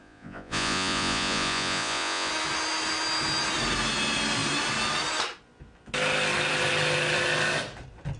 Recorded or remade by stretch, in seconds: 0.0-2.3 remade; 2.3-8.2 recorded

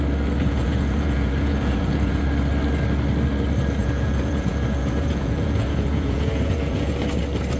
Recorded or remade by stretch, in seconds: 0.0-0.4 recorded; 0.4-2.2 remade; 2.2-3.8 recorded; 3.8-6.9 remade; 6.9-7.6 recorded